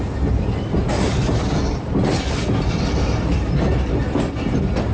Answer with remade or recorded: recorded